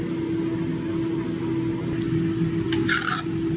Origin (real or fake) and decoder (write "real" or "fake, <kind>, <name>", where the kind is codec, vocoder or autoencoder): real